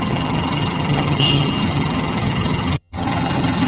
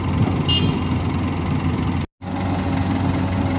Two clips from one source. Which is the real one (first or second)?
second